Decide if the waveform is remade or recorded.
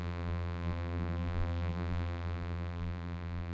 remade